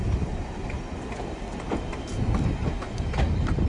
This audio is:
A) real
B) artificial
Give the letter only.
B